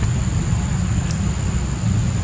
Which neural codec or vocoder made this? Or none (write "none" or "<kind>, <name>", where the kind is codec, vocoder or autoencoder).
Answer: none